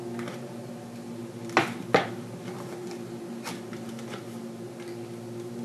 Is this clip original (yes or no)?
yes